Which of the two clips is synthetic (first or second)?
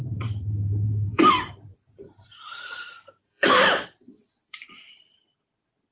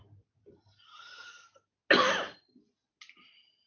first